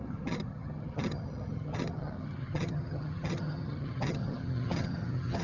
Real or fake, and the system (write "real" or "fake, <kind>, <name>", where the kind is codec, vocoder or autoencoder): fake, vocoder, HiFi-GAN